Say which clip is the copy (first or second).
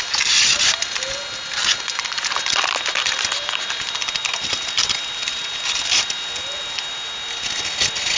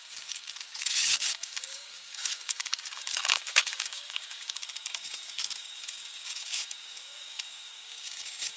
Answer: second